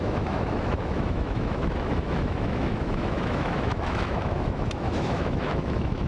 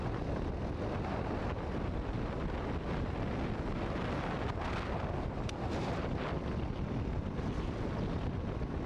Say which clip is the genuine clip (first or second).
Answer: second